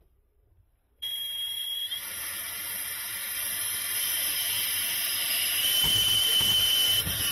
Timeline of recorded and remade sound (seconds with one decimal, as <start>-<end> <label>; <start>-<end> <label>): 0.0-2.6 remade; 2.6-5.6 recorded; 5.6-7.3 remade